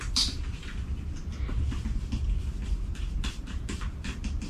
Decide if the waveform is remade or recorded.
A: recorded